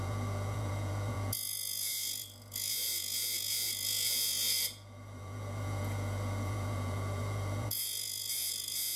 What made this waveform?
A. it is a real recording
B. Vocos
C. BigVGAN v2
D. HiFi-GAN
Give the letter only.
B